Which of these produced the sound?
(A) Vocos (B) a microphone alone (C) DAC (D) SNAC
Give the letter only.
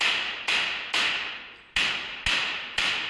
B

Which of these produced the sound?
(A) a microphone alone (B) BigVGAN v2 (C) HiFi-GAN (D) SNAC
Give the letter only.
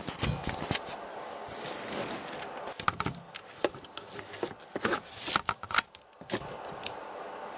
A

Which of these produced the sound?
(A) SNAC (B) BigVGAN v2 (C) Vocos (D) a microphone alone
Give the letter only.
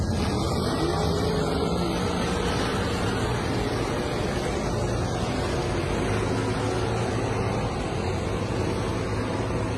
D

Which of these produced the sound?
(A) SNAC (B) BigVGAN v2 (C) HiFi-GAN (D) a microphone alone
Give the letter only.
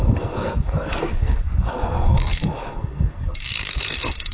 A